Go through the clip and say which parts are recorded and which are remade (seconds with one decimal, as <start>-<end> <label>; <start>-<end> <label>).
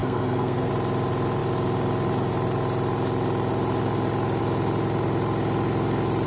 0.0-0.7 remade; 0.7-6.3 recorded